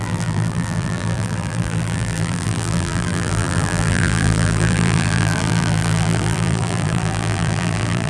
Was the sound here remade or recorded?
remade